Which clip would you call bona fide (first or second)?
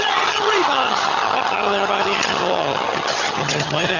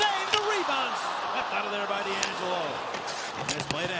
second